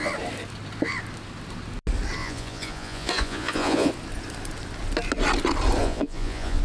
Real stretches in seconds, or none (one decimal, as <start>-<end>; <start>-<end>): 0.0-2.2; 3.9-5.8